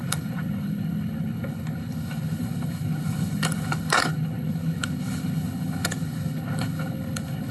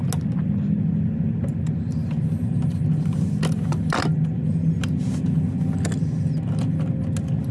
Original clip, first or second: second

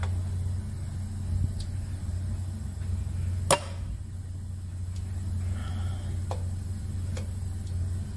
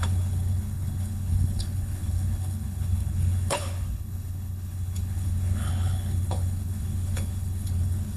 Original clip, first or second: first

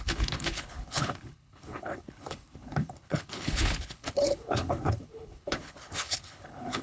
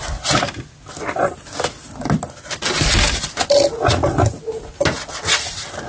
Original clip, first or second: second